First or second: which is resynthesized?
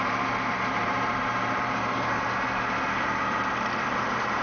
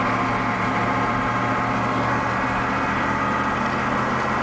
first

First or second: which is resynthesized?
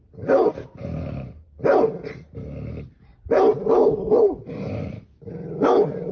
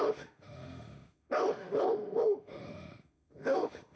second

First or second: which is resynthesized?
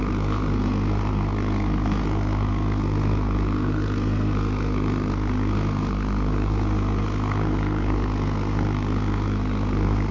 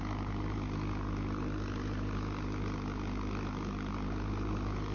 first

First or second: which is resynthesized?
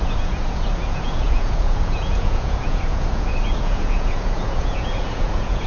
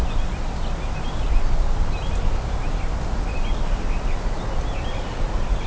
first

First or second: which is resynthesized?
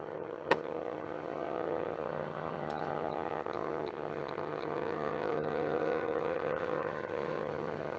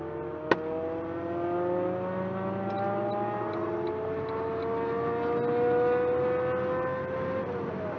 first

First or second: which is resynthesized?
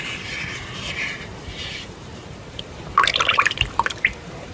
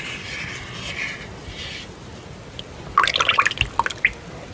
first